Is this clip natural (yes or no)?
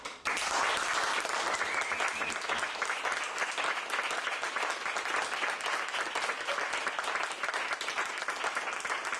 yes